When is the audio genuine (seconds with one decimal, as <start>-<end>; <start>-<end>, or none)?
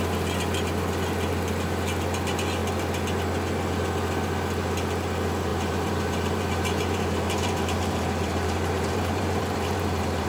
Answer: 0.0-5.5